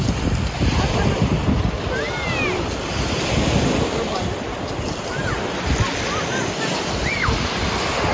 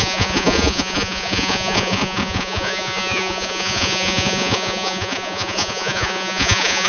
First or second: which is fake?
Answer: second